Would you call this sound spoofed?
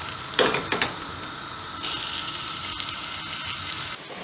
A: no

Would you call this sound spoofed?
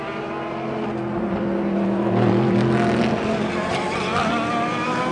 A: no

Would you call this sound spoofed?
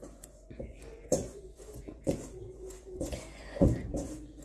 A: yes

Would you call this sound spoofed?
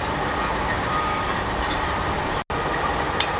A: no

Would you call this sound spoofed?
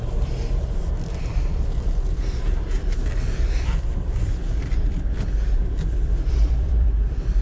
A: yes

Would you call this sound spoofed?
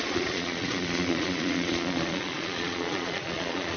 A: yes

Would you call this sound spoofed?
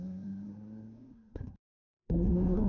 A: yes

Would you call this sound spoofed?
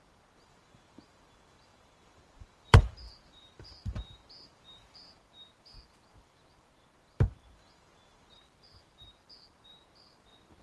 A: yes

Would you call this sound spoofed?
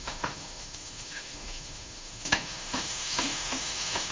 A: yes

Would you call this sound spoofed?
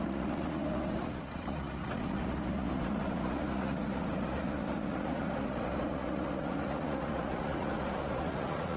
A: yes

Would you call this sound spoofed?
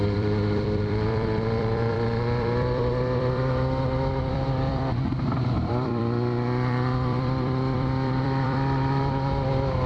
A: yes